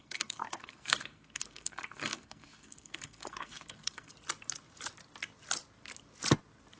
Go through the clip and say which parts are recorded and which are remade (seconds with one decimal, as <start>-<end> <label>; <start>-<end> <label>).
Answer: 0.0-4.1 remade; 4.1-6.8 recorded